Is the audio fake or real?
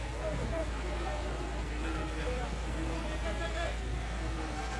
fake